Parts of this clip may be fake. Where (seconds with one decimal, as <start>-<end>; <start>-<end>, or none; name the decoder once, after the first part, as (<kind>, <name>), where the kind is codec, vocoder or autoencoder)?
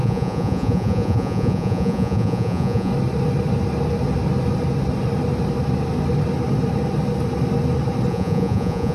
0.0-2.9 (vocoder, Vocos); 8.1-8.9